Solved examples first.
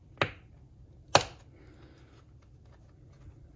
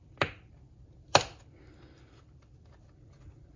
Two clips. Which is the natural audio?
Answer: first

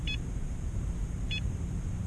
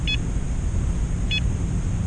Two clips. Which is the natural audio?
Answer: second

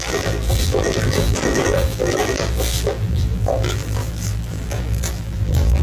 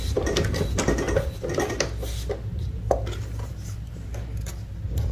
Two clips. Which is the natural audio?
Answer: second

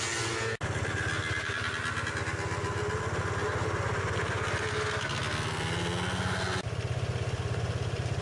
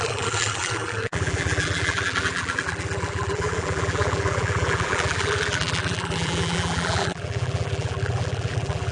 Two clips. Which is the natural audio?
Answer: first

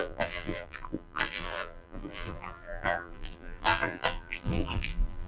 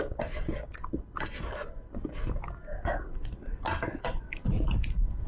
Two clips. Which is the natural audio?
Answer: second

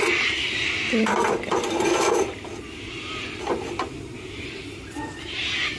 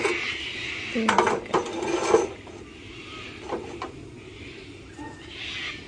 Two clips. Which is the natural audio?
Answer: second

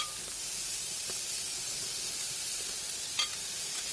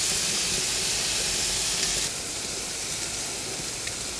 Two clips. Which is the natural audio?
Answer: second